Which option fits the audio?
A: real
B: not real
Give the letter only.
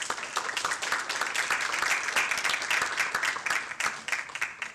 A